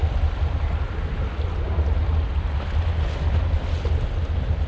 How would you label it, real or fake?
real